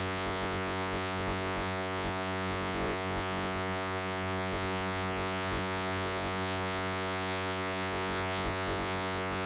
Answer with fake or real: fake